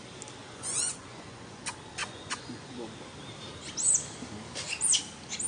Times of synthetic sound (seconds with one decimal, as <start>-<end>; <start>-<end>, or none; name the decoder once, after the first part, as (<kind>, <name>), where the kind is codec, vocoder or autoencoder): 0.4-1.6 (vocoder, Vocos); 2.0-2.7